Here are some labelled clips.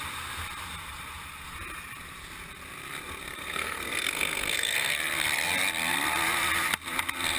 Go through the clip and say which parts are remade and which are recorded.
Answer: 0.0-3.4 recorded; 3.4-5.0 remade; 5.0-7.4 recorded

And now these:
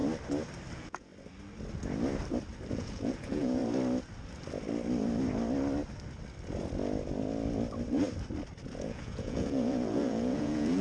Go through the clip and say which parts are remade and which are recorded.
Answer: 0.0-0.7 recorded; 0.7-1.1 remade; 1.1-2.7 recorded; 2.7-3.6 remade; 3.6-8.8 recorded; 8.8-10.8 remade

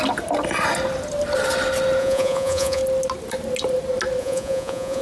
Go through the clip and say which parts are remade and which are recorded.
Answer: 0.0-2.0 recorded; 2.0-2.8 remade; 2.8-4.2 recorded; 4.2-5.0 remade